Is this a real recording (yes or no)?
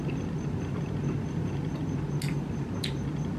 yes